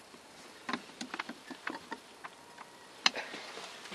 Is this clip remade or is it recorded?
recorded